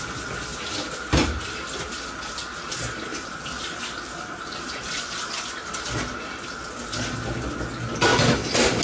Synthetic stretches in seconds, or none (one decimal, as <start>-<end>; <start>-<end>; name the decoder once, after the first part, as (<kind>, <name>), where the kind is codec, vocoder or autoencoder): 3.1-4.9 (vocoder, BigVGAN v2)